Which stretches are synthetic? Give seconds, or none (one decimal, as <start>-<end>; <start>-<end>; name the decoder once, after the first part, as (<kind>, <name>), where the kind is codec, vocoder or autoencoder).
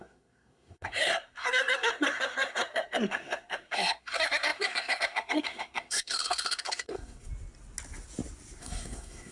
0.0-7.3 (codec, SNAC); 8.6-9.3